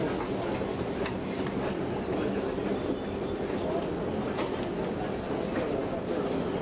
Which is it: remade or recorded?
recorded